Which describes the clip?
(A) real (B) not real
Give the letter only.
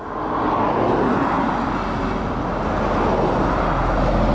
A